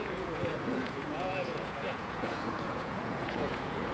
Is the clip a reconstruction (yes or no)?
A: yes